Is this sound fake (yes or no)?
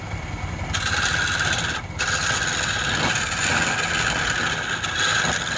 no